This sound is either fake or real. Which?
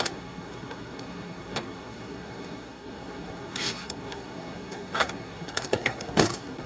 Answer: fake